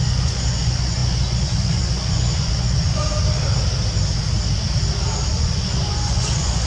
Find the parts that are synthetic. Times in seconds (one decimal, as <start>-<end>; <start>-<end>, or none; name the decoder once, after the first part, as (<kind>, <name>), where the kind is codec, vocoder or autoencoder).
0.0-3.0 (vocoder, Vocos); 5.3-6.7